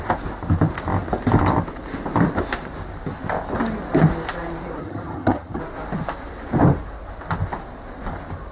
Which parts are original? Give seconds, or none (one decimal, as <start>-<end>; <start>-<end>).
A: 0.0-4.8; 5.6-8.5